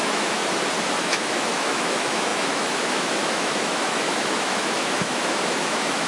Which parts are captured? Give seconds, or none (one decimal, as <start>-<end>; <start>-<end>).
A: 0.4-1.0

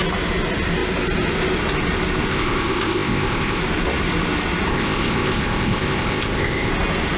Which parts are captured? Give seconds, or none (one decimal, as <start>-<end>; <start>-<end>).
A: 0.0-2.3; 3.6-4.7; 6.7-7.2